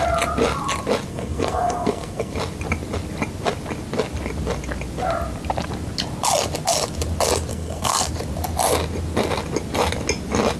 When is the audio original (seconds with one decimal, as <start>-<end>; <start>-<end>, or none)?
0.0-1.1; 2.3-7.5; 8.1-10.6